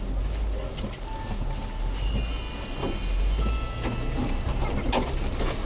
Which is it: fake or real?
real